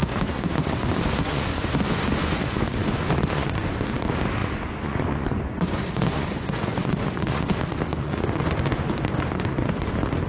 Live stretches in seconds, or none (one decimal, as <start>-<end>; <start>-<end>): 4.0-4.4; 7.5-7.9; 9.9-10.3